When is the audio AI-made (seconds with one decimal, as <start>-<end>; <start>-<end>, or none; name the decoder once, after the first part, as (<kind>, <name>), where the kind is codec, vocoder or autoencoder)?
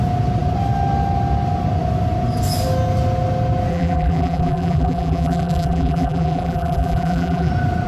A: 3.7-7.5 (vocoder, BigVGAN v2)